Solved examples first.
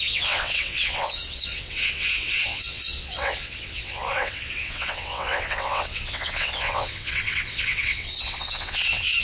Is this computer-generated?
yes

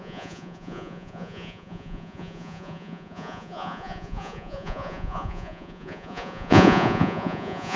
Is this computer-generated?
yes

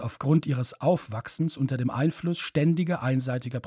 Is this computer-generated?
no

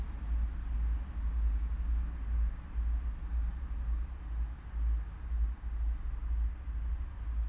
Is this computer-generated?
no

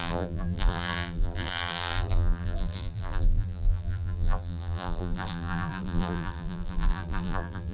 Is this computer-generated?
yes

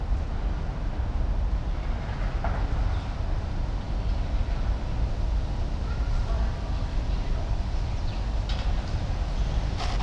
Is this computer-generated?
no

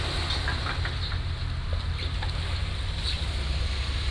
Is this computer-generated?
no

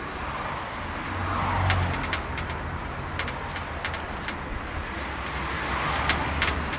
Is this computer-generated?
no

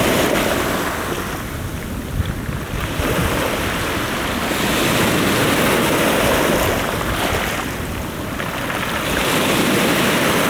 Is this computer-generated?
no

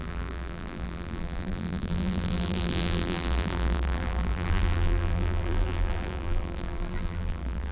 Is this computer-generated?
yes